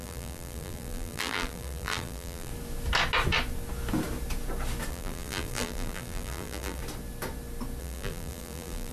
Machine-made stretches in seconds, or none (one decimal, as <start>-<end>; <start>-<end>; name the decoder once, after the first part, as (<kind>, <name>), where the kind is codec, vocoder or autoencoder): 0.0-2.5 (vocoder, BigVGAN v2); 4.9-6.8; 7.8-8.9